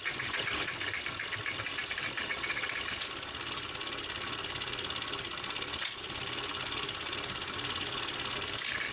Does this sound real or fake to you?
real